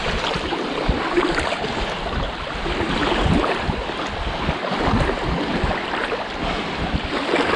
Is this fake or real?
real